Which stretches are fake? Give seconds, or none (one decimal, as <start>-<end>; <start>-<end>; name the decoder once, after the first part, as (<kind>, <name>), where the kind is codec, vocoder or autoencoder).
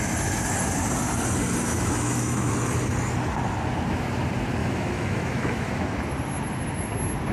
1.7-2.5 (autoencoder, DAC-VAE); 4.6-5.7